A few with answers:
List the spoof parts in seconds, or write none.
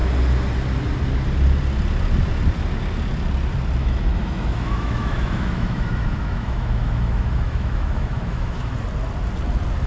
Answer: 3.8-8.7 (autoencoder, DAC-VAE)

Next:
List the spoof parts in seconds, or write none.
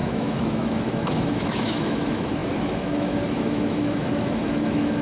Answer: 0.0-5.0 (autoencoder, DAC-VAE)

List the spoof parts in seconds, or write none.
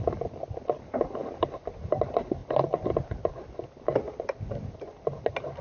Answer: none